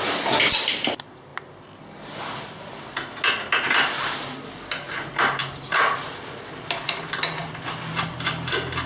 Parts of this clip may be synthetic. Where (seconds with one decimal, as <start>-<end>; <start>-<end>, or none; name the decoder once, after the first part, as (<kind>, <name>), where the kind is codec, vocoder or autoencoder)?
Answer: none